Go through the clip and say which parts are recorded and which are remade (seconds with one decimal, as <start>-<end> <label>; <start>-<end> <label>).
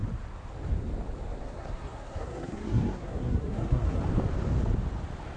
0.0-1.4 recorded; 1.4-4.0 remade; 4.0-5.4 recorded